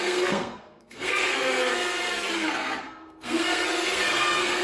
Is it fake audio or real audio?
fake